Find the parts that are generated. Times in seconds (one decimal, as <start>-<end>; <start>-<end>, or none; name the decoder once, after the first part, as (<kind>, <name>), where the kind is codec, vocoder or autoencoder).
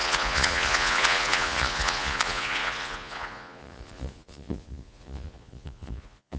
0.0-6.4 (vocoder, Vocos)